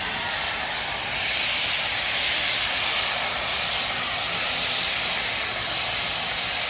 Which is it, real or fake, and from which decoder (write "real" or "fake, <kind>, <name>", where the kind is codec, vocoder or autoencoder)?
real